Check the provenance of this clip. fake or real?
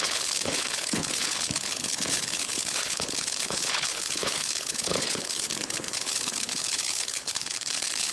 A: fake